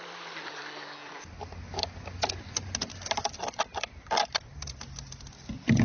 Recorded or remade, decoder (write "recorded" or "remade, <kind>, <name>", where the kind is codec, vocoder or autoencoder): recorded